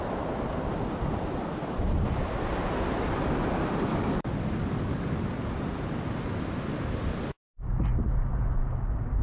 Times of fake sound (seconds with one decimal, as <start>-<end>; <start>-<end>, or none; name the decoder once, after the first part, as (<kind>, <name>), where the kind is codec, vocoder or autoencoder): 3.9-5.2 (codec, DAC)